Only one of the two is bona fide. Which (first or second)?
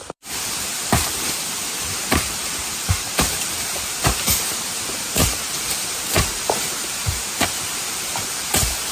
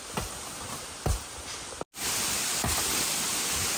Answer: second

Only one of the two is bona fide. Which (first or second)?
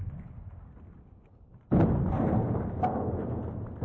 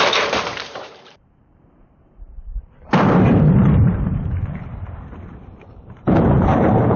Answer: first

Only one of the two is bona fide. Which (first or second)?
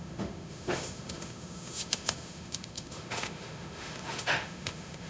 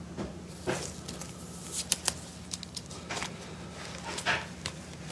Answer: second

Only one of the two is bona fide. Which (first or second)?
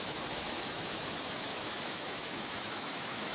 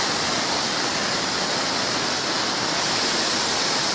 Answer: second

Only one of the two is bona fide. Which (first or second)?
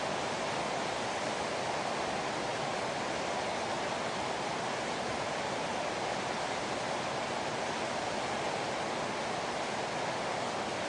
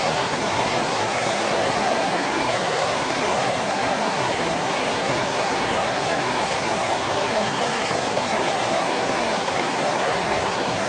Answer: first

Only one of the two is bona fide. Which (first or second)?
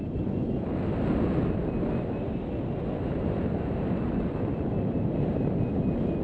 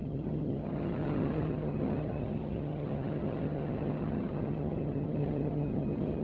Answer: first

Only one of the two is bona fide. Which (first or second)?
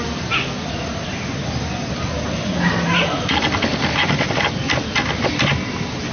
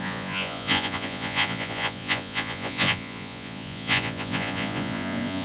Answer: first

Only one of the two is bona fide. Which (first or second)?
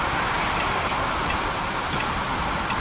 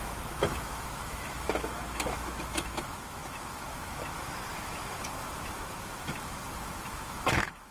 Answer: first